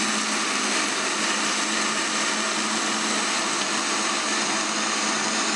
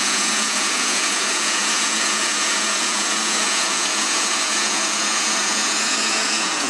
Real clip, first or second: first